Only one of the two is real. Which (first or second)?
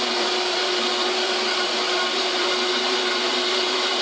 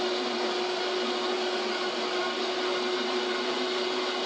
second